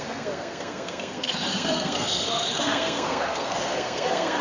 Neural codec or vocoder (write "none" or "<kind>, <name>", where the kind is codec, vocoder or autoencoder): codec, SNAC